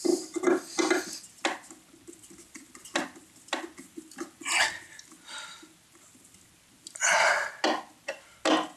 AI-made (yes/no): no